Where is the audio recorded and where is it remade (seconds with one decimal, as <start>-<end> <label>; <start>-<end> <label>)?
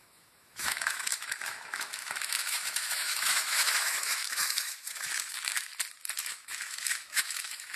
0.0-5.7 remade; 5.7-6.2 recorded; 6.2-7.8 remade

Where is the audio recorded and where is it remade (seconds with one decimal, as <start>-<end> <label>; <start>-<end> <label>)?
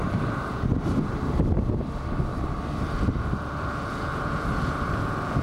0.0-0.5 remade; 0.5-2.3 recorded; 2.3-2.8 remade; 2.8-4.1 recorded; 4.1-5.0 remade; 5.0-5.4 recorded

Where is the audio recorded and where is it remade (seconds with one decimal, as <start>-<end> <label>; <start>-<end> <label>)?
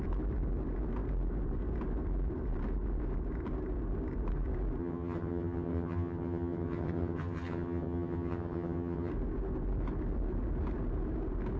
0.0-4.8 recorded; 4.8-9.1 remade; 9.1-11.6 recorded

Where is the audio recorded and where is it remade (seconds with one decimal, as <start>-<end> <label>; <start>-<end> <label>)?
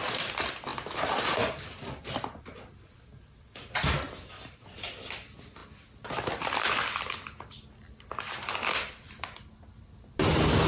0.0-0.7 remade; 0.7-4.5 recorded; 4.5-10.7 remade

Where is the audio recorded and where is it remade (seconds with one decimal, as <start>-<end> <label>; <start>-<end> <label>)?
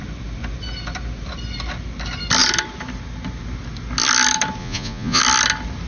0.0-4.6 recorded; 4.6-5.2 remade; 5.2-5.9 recorded